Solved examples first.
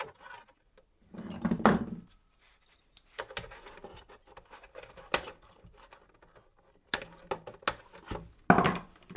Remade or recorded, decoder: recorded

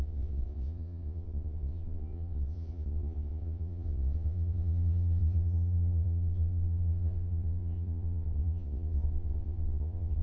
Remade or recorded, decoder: remade, vocoder, Vocos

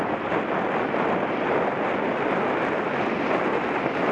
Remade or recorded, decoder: recorded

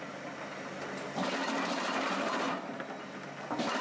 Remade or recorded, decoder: recorded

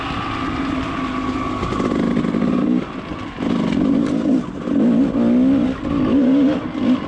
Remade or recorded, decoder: recorded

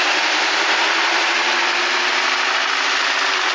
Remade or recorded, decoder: recorded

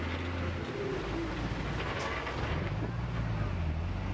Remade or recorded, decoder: recorded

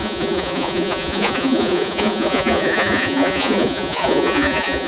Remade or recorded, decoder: remade, vocoder, Vocos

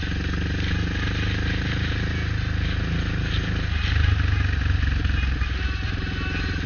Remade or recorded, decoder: recorded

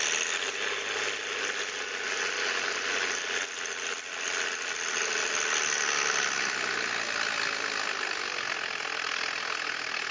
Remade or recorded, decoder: recorded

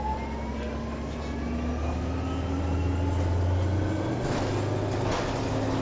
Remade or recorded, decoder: recorded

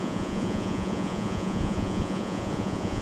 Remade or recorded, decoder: remade, vocoder, Vocos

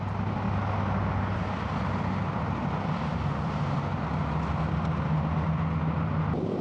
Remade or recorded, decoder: recorded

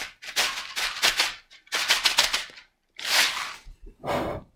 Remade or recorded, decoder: recorded